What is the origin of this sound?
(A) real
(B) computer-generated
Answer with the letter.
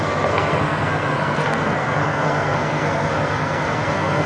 B